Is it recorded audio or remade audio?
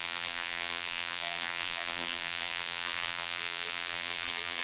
remade